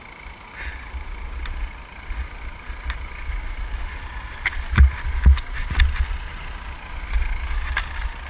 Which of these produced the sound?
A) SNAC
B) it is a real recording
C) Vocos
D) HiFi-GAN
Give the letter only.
B